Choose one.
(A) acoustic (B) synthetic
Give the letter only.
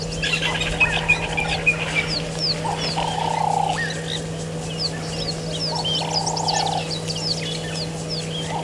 A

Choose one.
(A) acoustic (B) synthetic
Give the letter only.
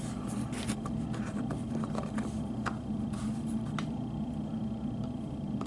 A